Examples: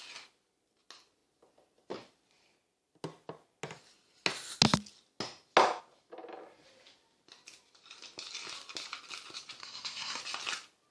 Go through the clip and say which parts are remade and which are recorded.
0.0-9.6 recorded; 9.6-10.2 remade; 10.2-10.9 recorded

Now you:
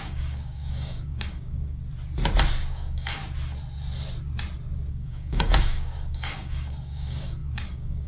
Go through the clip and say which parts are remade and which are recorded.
0.0-1.8 remade; 1.8-2.7 recorded; 2.7-3.2 remade; 3.2-4.9 recorded; 4.9-8.1 remade

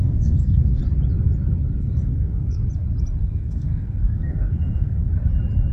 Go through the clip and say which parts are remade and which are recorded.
0.0-0.8 remade; 0.8-1.8 recorded; 1.8-2.6 remade; 2.6-3.2 recorded; 3.2-5.1 remade; 5.1-5.7 recorded